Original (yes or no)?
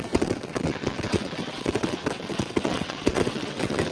no